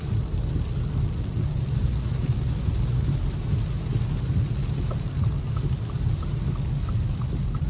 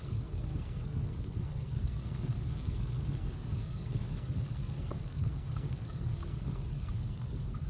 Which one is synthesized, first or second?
second